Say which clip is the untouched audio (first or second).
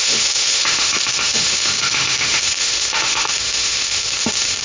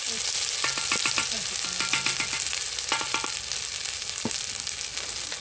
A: second